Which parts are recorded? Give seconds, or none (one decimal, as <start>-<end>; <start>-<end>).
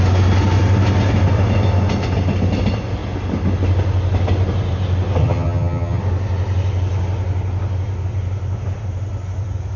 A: 0.0-5.2; 6.0-9.8